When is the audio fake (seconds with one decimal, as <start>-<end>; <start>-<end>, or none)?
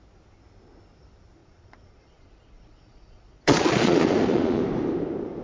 1.4-4.6